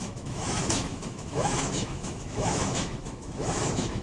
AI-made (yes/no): yes